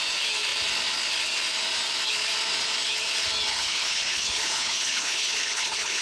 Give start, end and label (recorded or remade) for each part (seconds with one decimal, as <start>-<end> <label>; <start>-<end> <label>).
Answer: 0.0-3.5 recorded; 3.5-6.0 remade